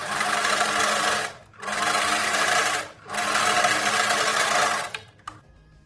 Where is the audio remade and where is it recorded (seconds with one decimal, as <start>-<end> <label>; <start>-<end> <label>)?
0.0-0.7 remade; 0.7-2.2 recorded; 2.2-3.1 remade; 3.1-5.9 recorded